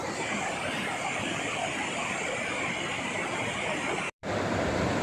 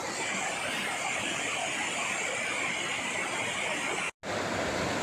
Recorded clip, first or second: second